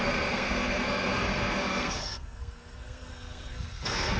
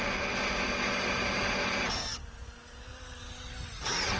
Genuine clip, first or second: second